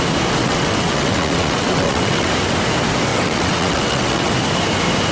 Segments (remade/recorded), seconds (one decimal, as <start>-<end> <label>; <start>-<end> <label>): 0.0-0.4 recorded; 0.4-2.3 remade; 2.3-3.1 recorded; 3.1-4.3 remade; 4.3-5.1 recorded